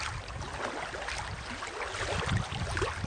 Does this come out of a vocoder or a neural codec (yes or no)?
no